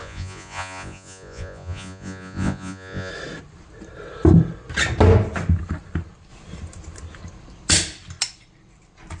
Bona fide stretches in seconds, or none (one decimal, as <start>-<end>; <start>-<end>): 3.1-9.2